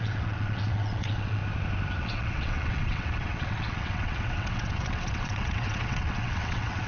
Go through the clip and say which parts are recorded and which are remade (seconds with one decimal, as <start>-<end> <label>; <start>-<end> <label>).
0.0-1.4 remade; 1.4-2.0 recorded; 2.0-6.9 remade